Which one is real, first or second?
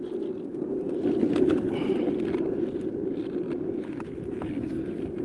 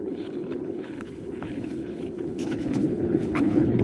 first